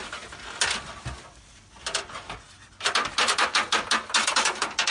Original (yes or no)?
yes